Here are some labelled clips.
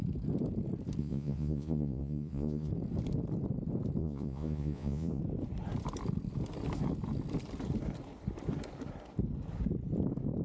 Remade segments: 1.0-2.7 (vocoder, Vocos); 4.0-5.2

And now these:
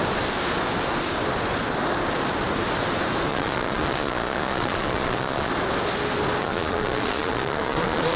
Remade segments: 3.3-5.5 (vocoder, Vocos); 6.4-8.2